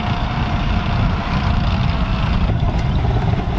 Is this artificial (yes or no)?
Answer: no